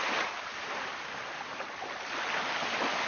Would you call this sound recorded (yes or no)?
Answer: yes